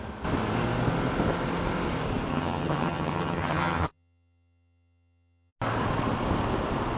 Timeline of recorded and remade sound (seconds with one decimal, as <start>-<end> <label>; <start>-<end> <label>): 0.0-2.3 recorded; 2.3-5.5 remade; 5.5-7.0 recorded